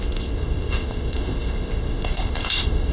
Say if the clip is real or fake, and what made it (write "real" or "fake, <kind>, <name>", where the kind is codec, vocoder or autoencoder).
fake, codec, ZipCodec